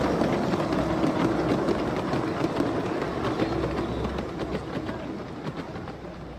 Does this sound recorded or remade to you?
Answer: recorded